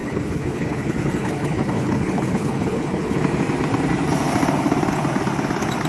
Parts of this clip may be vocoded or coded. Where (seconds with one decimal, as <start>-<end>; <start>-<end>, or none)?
0.0-3.2